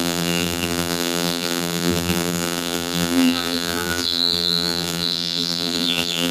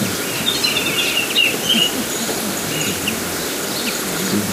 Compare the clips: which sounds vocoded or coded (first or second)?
first